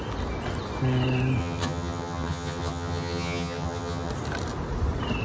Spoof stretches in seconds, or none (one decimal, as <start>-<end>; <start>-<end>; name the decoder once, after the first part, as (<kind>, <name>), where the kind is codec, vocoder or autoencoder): 1.4-4.1 (vocoder, HiFi-GAN)